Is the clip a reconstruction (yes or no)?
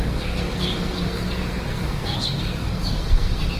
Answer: yes